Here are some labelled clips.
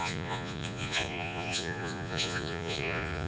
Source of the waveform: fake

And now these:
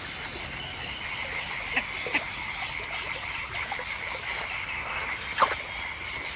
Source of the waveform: real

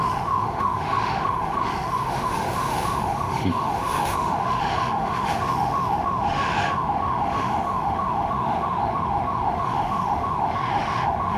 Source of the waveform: fake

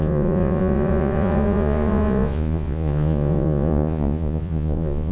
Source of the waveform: fake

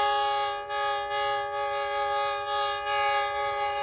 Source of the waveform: real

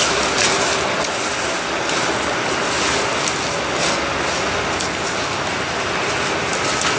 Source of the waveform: real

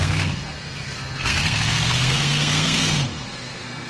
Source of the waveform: fake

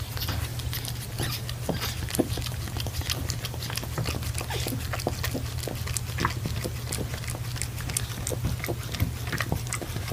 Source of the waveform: real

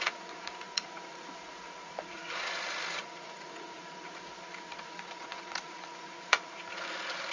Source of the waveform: fake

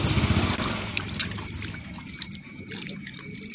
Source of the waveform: real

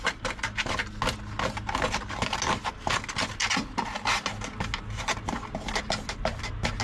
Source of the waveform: real